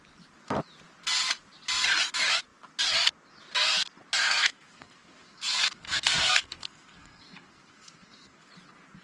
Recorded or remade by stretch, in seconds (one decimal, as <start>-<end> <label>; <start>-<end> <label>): 0.0-4.2 recorded; 4.2-8.5 remade; 8.5-9.0 recorded